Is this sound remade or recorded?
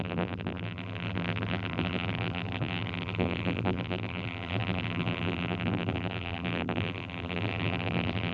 remade